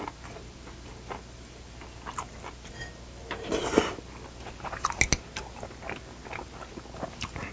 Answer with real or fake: real